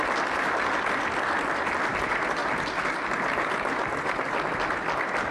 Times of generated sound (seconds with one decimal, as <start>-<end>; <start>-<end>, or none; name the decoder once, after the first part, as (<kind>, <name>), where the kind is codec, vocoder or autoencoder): none